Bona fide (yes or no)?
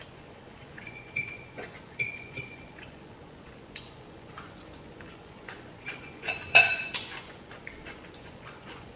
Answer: no